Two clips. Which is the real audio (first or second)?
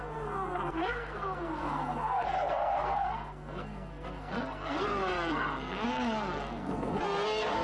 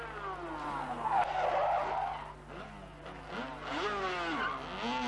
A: second